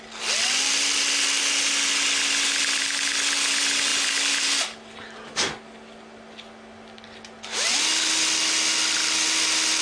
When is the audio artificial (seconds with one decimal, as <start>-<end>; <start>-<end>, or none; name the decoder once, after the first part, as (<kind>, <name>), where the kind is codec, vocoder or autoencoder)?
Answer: none